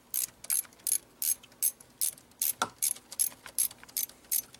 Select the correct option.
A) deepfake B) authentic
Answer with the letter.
B